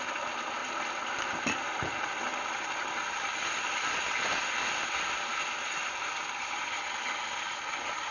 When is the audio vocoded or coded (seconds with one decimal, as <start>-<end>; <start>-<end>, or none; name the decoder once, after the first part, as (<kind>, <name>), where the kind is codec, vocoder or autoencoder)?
0.6-1.9 (vocoder, BigVGAN v2)